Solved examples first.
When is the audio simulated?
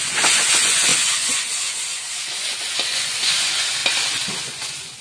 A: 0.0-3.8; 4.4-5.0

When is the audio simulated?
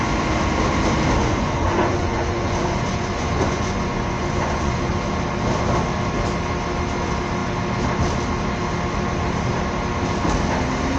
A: 1.2-4.9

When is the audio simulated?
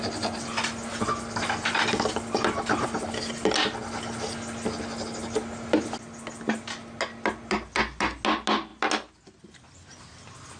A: none